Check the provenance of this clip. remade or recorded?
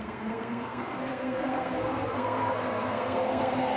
remade